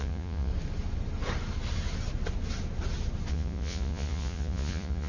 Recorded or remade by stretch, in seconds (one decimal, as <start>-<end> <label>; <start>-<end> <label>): 0.0-0.5 remade; 0.5-3.3 recorded; 3.3-5.1 remade